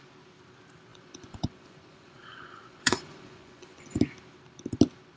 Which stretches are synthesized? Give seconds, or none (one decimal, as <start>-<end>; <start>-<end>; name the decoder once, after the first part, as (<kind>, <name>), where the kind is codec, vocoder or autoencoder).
0.9-4.0 (vocoder, Vocos)